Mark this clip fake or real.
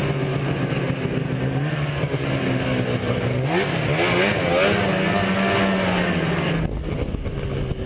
real